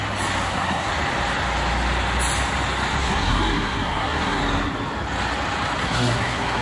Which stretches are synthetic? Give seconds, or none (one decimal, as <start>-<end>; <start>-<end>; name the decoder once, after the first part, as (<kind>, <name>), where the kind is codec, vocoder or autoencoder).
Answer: 0.4-0.9 (codec, SNAC); 3.0-4.4; 5.8-6.6